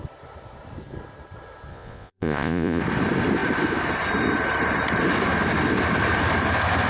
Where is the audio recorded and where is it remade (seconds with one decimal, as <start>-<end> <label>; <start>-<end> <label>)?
0.0-1.7 recorded; 1.7-2.8 remade; 2.8-6.9 recorded